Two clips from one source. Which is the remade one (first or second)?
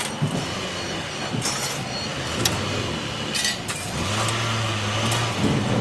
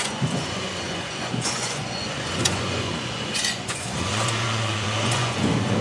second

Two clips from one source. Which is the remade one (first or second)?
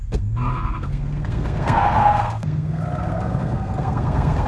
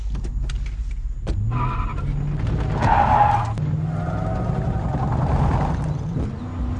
first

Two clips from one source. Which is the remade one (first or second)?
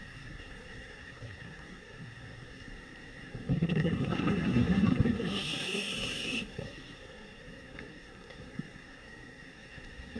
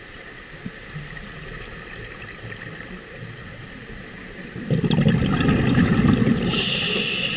first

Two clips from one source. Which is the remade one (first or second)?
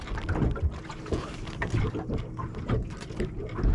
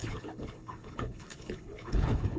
second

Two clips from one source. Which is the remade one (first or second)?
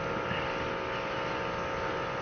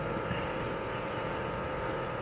second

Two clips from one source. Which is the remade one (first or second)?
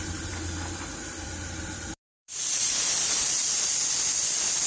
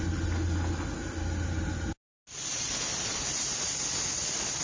first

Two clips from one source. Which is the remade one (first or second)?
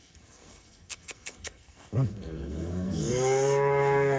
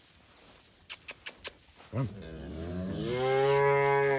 first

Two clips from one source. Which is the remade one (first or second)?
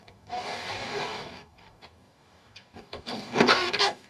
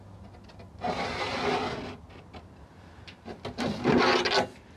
first